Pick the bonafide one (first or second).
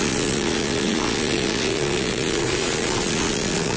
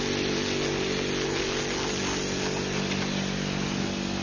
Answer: second